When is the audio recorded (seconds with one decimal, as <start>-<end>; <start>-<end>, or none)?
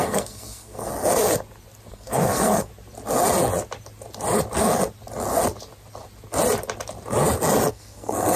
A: 0.9-1.9; 2.7-7.7